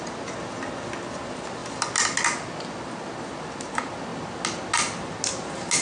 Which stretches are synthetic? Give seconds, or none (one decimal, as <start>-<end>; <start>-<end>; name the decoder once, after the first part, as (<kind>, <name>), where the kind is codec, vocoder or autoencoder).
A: none